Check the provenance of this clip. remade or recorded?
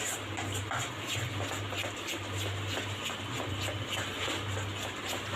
recorded